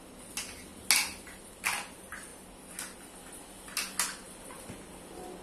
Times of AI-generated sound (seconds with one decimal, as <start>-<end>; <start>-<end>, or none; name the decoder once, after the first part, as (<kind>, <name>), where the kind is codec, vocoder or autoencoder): none